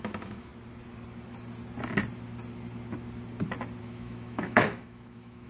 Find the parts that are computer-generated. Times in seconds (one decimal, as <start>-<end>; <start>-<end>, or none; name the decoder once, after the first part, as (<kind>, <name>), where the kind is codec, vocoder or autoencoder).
0.0-0.5 (autoencoder, DAC-VAE); 3.8-5.5